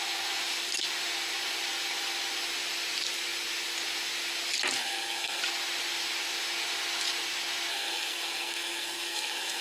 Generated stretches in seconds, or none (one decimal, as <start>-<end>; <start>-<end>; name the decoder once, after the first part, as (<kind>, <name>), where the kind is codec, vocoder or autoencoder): 4.8-5.4 (codec, SNAC); 7.7-9.6